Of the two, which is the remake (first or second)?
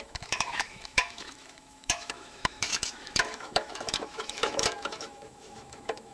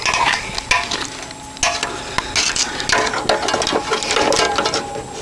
first